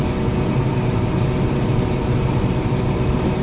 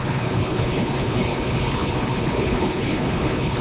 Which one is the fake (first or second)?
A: second